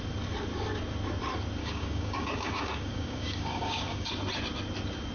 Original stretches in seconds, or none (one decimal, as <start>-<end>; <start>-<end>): 0.0-1.6; 4.1-5.1